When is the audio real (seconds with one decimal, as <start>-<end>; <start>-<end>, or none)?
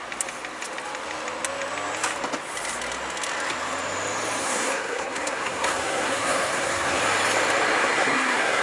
0.0-4.4; 7.0-7.8